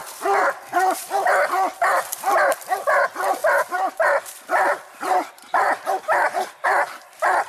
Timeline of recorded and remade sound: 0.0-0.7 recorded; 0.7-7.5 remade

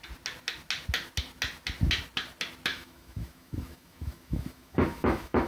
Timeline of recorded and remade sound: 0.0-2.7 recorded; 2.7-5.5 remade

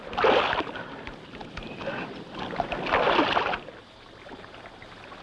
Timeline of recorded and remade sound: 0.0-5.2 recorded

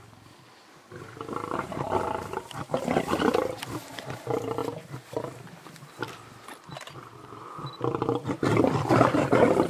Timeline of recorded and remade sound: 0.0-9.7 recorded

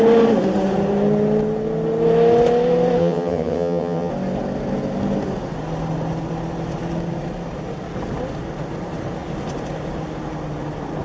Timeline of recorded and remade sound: 0.0-3.0 recorded; 3.0-4.1 remade; 4.1-11.0 recorded

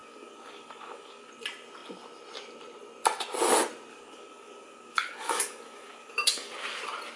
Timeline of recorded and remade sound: 0.0-1.3 remade; 1.3-3.9 recorded; 3.9-6.5 remade; 6.5-7.2 recorded

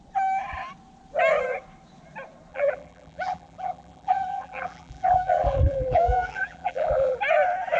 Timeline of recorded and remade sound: 0.0-2.5 recorded; 2.5-7.2 remade; 7.2-7.8 recorded

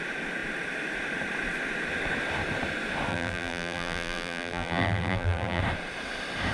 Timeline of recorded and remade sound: 0.0-3.1 recorded; 3.1-5.6 remade; 5.6-6.5 recorded